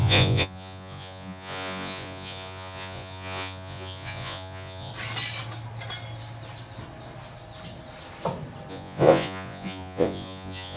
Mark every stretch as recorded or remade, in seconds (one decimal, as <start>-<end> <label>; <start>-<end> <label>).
0.0-4.9 remade; 4.9-8.7 recorded; 8.7-10.8 remade